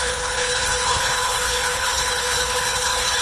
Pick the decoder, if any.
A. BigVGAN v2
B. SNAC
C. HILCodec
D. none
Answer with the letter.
C